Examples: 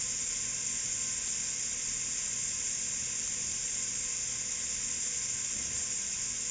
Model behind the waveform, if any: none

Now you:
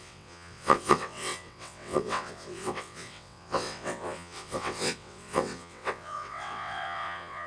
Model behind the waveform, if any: vocoder, WaveNeXt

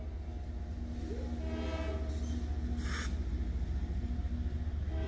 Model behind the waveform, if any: none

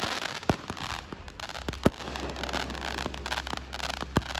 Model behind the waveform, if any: none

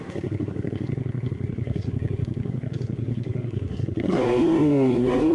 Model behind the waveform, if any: codec, SNAC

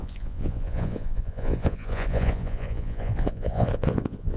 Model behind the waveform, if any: vocoder, Vocos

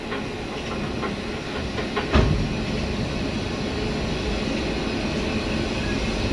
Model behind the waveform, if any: none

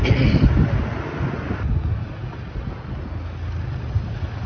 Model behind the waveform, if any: none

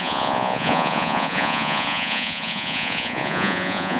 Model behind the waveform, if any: vocoder, Vocos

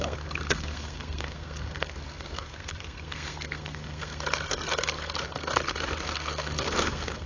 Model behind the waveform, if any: codec, SNAC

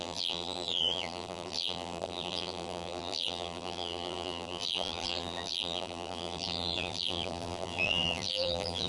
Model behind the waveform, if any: vocoder, BigVGAN v2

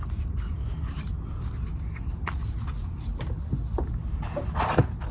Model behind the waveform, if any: none